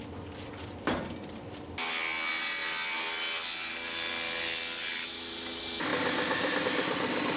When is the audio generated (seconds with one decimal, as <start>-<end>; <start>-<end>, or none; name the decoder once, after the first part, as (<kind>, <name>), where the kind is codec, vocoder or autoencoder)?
none